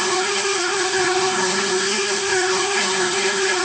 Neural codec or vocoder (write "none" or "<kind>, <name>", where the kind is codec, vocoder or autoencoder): codec, SNAC